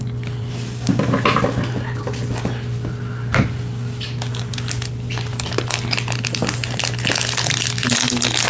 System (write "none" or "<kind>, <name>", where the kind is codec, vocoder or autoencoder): none